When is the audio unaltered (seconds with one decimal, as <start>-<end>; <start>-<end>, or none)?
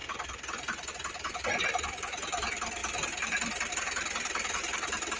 0.0-0.9; 2.8-3.7